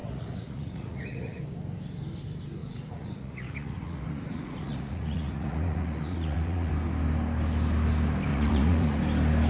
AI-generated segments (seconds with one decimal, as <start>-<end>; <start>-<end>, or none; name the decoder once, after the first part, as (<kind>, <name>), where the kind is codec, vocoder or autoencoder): 0.0-1.4 (vocoder, Vocos); 2.6-6.7; 8.3-9.0